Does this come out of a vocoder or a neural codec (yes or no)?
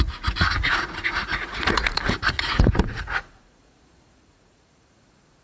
yes